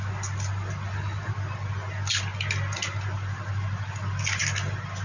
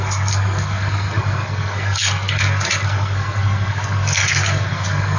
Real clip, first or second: first